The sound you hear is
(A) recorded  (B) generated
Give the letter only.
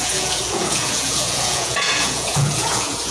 B